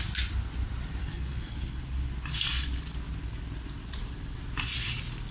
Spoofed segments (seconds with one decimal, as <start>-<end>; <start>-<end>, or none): 1.0-1.8